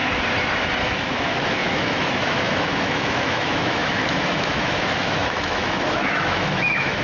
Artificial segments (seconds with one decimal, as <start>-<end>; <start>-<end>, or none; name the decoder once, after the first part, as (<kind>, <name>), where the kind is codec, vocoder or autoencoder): 0.8-7.0 (autoencoder, DAC-VAE)